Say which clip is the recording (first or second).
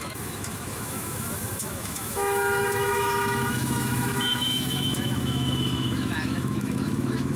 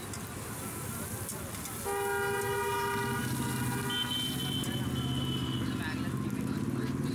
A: second